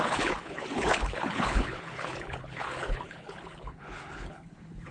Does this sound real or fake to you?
fake